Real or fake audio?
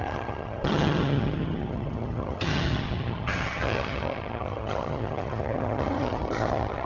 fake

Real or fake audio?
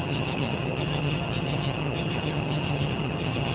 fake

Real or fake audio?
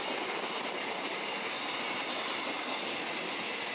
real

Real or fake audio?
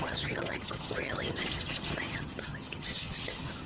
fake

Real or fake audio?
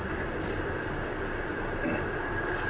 real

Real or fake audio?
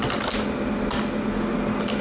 real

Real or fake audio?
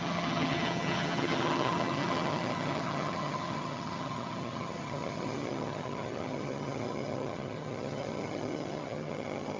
fake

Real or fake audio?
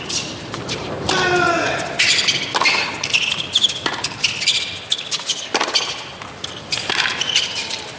real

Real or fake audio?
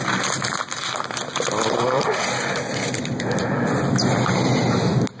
real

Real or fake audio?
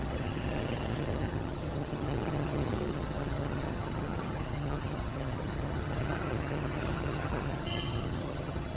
fake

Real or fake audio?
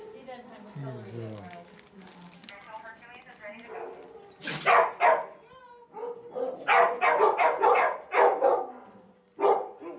real